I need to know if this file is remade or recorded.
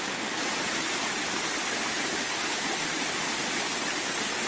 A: recorded